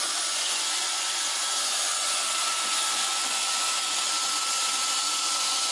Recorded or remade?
remade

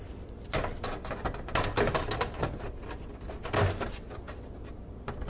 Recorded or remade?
recorded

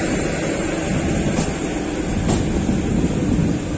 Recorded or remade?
recorded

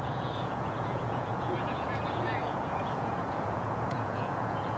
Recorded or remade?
remade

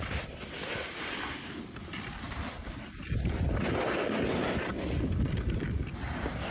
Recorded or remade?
remade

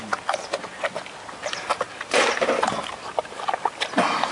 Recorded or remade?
recorded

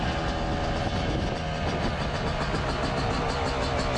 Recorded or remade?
recorded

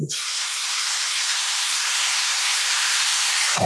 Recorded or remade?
remade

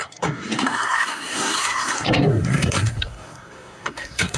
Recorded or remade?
remade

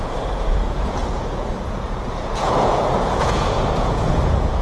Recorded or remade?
remade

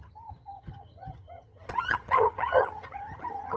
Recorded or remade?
remade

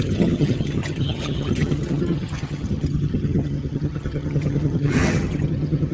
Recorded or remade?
remade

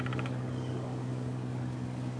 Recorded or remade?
remade